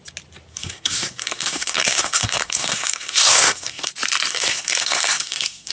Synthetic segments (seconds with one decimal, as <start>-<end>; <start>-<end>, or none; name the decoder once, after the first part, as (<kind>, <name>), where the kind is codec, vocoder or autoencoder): 0.5-3.9 (codec, SNAC); 4.3-5.7